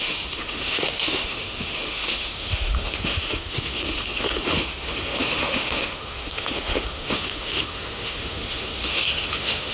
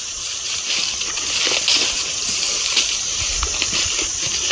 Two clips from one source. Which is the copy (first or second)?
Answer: first